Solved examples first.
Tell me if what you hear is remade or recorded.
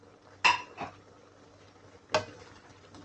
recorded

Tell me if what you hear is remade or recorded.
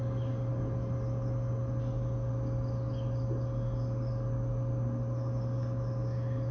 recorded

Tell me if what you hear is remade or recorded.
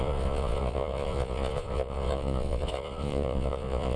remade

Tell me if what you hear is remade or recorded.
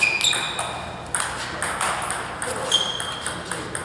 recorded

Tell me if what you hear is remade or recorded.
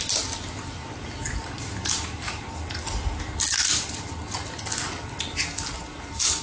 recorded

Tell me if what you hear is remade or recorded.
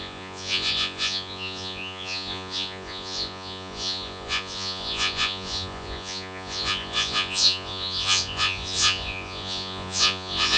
remade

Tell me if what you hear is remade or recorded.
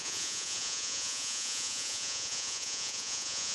remade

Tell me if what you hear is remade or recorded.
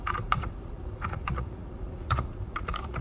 remade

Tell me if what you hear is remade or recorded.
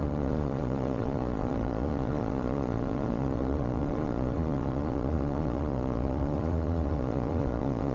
remade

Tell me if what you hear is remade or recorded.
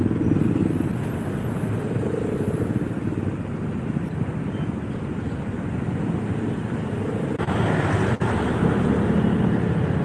recorded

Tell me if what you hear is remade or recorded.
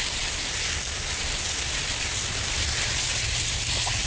recorded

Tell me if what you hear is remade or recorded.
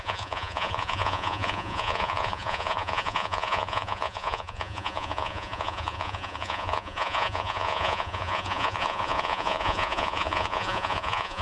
remade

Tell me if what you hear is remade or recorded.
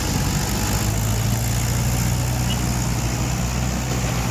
recorded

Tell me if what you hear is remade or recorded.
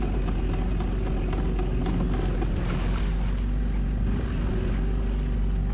recorded